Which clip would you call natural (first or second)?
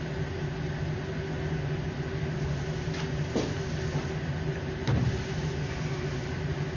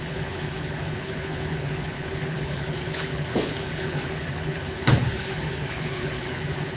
first